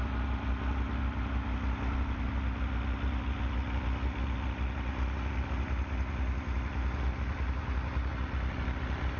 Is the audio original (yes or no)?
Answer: yes